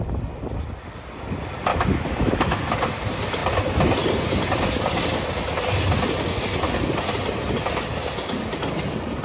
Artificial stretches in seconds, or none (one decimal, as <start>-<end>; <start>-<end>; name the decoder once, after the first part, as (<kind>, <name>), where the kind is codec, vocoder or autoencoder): 1.7-2.6 (autoencoder, DAC-VAE)